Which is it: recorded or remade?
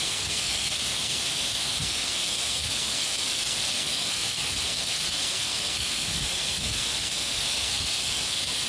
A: remade